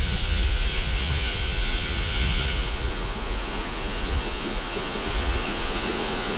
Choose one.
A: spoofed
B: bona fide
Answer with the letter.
A